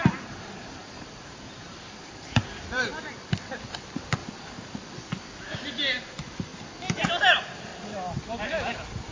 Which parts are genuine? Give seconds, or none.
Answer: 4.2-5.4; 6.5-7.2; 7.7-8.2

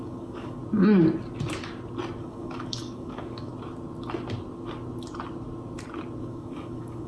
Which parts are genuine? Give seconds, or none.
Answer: 0.6-2.2; 3.5-6.2

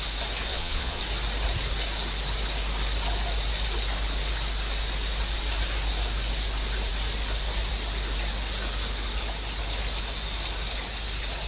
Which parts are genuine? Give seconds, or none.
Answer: 0.0-0.5; 1.0-11.5

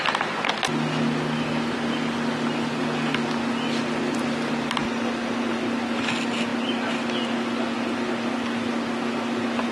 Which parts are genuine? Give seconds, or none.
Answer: 0.0-4.8; 5.6-9.7

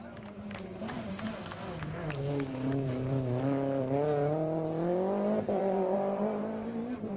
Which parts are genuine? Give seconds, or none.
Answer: 1.4-5.6

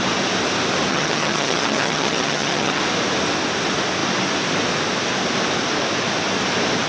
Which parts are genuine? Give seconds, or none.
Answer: 0.0-0.9; 2.8-6.9

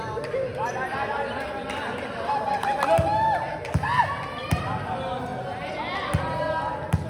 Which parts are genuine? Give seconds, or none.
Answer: 0.0-7.1